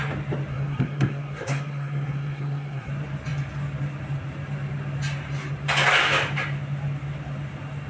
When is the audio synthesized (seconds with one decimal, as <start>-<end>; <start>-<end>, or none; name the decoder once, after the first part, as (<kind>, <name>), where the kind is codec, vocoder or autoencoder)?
0.5-2.9 (codec, SNAC)